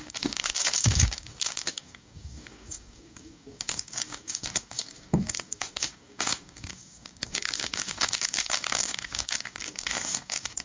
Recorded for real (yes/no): no